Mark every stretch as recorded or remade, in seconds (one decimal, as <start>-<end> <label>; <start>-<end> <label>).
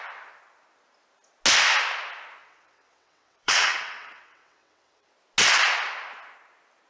0.0-2.4 recorded; 2.4-5.1 remade; 5.1-6.9 recorded